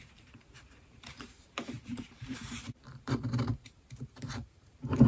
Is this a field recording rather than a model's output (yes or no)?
no